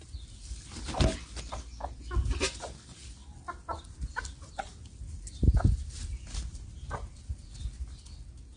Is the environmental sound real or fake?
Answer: real